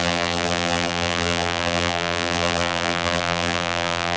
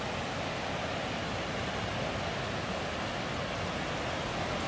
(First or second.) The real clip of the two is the second